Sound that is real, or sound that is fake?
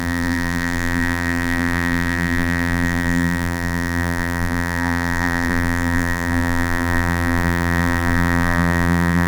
fake